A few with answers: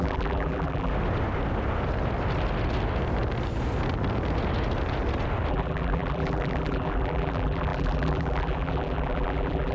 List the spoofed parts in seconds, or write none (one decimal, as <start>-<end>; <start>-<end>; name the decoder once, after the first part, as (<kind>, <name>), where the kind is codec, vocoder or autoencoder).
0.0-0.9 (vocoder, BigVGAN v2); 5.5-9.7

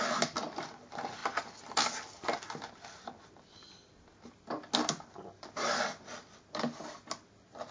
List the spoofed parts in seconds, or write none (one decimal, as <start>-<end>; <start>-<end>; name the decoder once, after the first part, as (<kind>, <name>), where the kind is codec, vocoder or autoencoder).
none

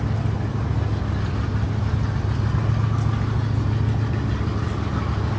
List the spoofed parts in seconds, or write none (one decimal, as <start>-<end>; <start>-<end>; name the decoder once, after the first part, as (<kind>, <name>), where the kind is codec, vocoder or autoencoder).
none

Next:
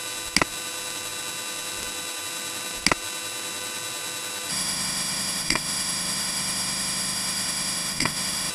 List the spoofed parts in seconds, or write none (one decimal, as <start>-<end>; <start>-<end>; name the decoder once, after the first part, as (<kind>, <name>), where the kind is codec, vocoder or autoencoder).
4.5-8.5 (autoencoder, DAC-VAE)

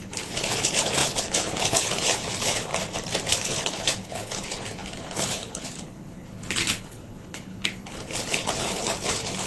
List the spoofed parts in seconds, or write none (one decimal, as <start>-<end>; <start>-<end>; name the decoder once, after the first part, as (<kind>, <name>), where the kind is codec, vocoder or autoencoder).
0.0-2.7 (codec, HILCodec); 3.3-9.5

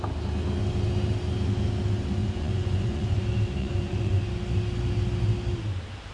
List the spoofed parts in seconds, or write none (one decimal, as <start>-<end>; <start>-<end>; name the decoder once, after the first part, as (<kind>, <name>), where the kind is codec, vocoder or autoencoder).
2.2-3.2 (vocoder, Vocos); 3.6-4.2

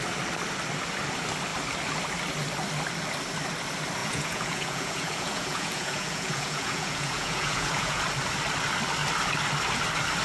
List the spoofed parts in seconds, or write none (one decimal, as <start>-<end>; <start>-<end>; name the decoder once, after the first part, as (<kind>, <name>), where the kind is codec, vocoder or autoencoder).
4.0-8.0 (vocoder, Vocos)

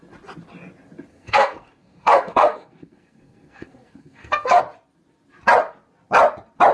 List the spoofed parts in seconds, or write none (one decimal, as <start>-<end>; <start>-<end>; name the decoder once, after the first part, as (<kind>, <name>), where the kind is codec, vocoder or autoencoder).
1.1-4.6 (codec, SNAC)